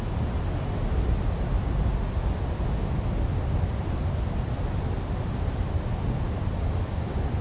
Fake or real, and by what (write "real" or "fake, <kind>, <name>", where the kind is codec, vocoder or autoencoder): real